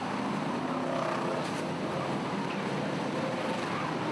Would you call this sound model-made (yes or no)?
no